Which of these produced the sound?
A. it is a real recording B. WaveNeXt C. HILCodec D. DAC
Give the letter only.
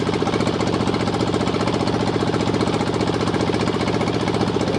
A